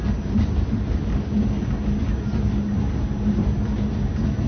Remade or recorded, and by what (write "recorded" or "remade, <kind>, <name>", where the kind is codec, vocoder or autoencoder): recorded